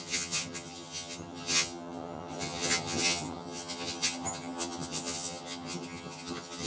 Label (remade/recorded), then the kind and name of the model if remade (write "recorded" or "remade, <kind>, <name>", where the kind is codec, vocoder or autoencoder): remade, vocoder, HiFi-GAN